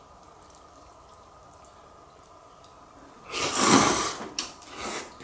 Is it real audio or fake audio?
fake